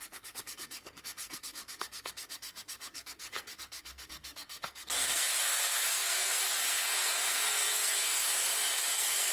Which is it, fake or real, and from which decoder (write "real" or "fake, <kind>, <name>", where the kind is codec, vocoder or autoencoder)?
fake, codec, SNAC